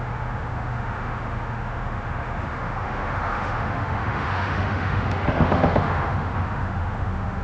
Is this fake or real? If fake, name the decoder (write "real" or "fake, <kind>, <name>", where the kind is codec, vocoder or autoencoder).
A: fake, autoencoder, DAC-VAE